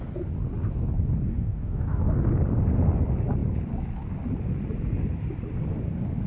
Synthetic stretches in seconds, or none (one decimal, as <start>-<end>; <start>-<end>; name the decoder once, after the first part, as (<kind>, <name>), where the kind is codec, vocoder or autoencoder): 1.3-2.0 (codec, DAC)